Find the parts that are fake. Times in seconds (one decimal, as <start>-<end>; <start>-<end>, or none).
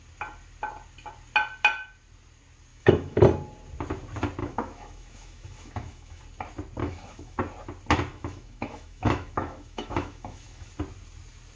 2.7-3.2; 4.4-6.2; 6.8-7.4; 8.1-10.7